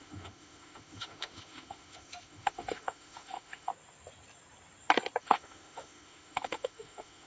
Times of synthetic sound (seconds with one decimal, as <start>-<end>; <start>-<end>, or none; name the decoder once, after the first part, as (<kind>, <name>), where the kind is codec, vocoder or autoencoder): 0.0-3.7 (autoencoder, DAC-VAE); 5.2-7.3